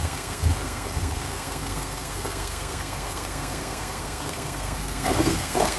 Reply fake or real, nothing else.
fake